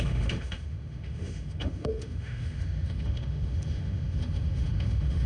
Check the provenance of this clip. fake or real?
fake